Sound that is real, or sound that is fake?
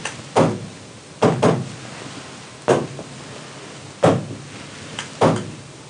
real